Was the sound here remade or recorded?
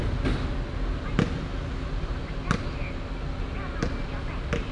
recorded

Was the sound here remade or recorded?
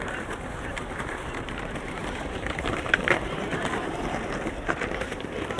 remade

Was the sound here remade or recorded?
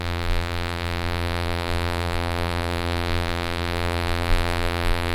remade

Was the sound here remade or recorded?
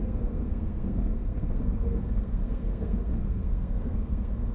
remade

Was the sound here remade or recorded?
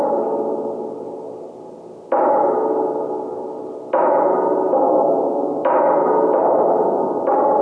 recorded